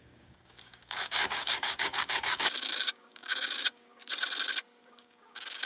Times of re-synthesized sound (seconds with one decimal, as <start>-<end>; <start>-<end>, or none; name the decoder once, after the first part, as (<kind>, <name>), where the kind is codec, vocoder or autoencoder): 0.0-4.0 (codec, DAC); 4.8-5.7

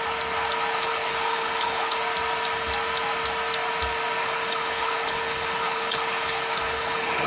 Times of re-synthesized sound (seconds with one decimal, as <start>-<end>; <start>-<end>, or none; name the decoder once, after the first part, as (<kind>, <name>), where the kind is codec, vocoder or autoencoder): 0.7-2.0 (codec, HILCodec); 4.2-7.3